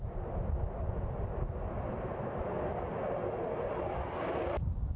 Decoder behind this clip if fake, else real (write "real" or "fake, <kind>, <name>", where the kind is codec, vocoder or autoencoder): real